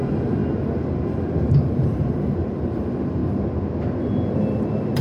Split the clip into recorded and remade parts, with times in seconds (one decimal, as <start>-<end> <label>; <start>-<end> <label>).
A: 0.0-0.4 remade; 0.4-1.1 recorded; 1.1-3.2 remade; 3.2-4.0 recorded; 4.0-5.0 remade